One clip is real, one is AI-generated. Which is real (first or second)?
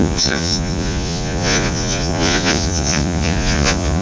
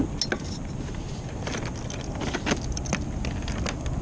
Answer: second